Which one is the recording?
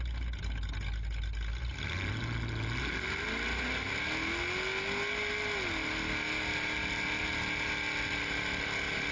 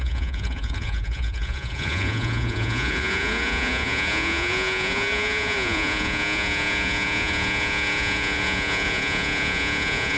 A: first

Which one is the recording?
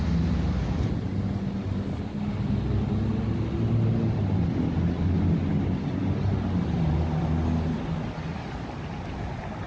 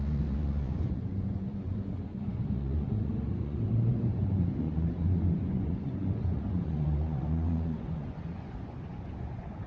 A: first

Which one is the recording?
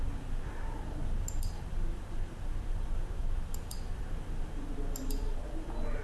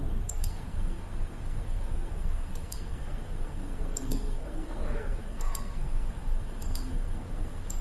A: first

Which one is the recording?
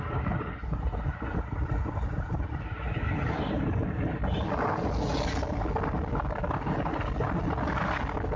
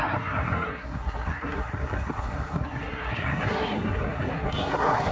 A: first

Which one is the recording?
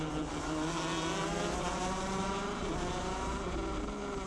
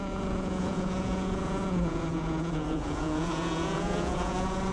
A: first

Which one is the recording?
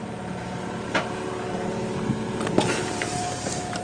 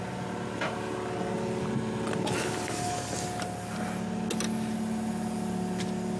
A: second